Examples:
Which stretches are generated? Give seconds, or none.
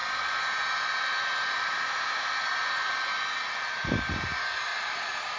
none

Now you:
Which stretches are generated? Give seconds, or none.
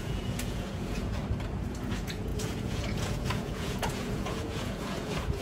0.0-1.2 (vocoder, Vocos); 1.8-5.4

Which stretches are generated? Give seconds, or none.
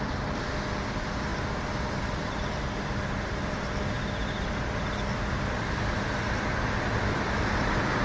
none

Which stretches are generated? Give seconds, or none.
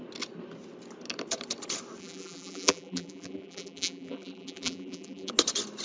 2.0-5.3 (vocoder, BigVGAN v2)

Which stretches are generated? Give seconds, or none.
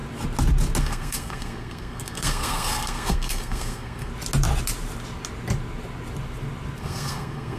0.8-4.1 (codec, SNAC); 6.8-7.6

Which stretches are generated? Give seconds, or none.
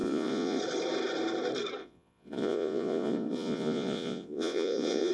0.0-0.6 (vocoder, Vocos); 1.8-5.1